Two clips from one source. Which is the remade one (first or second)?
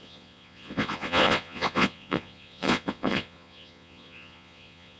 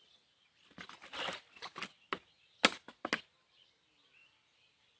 first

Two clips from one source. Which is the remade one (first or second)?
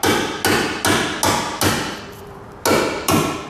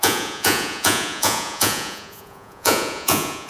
second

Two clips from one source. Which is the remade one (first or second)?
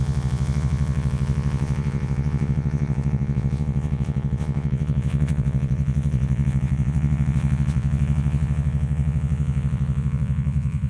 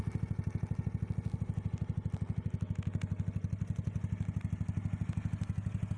first